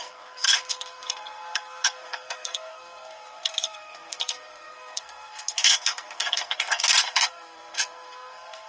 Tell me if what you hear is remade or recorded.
remade